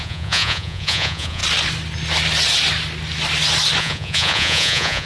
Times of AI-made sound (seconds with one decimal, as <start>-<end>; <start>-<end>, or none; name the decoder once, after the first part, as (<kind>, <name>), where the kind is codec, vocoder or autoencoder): 0.0-1.4 (vocoder, Vocos); 3.8-5.1